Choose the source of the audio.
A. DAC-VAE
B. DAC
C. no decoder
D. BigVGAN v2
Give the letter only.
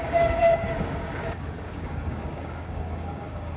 B